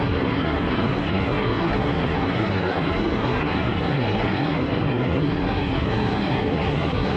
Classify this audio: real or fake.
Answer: fake